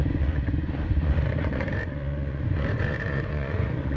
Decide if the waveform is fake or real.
fake